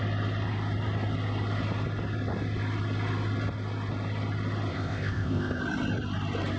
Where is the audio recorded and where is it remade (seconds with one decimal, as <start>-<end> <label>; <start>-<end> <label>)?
0.0-4.7 recorded; 4.7-5.6 remade; 5.6-6.6 recorded